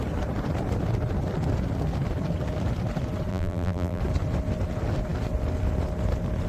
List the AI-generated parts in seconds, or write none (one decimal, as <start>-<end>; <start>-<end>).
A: 3.3-4.0